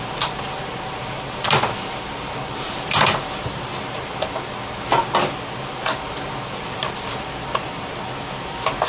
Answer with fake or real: real